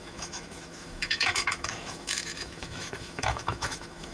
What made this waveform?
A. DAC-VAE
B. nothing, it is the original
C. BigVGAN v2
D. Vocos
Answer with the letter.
A